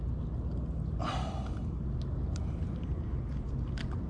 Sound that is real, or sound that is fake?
real